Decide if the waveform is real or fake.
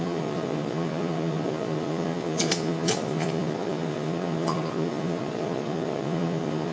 fake